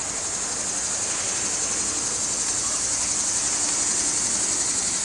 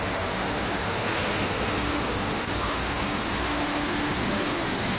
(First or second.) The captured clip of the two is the first